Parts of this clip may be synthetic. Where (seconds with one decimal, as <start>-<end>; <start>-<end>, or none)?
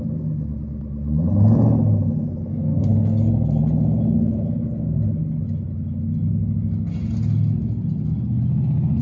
2.5-3.3